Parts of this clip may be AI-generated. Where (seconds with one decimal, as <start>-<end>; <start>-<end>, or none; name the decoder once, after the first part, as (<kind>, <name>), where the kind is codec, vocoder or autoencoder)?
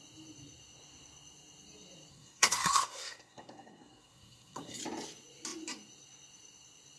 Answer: 2.1-4.8 (codec, SNAC)